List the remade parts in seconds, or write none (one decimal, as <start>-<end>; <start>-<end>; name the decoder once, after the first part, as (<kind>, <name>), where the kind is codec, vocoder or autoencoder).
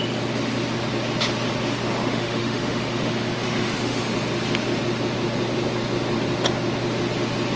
2.0-4.0 (autoencoder, DAC-VAE)